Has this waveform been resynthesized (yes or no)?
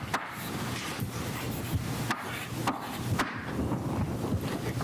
no